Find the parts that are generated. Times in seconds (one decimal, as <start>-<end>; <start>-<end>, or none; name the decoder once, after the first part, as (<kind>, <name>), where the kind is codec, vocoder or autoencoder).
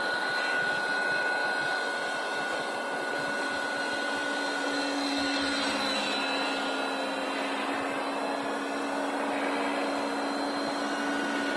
none